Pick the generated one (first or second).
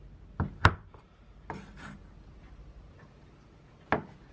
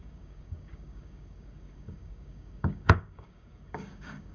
second